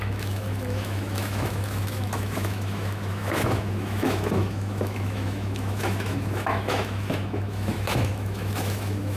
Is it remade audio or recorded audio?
remade